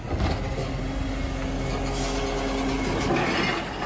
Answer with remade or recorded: recorded